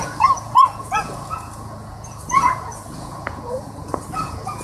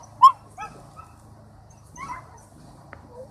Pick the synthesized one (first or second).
first